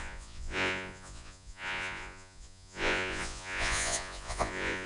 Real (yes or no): no